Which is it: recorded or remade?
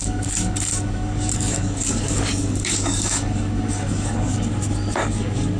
remade